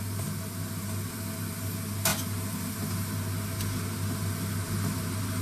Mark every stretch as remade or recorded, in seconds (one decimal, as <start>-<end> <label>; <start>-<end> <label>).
0.0-5.4 recorded